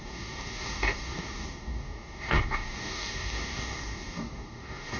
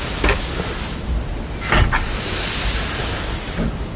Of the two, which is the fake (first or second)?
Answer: first